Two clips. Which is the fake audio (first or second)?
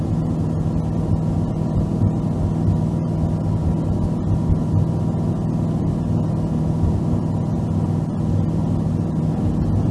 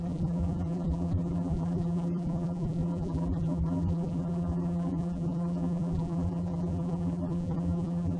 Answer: second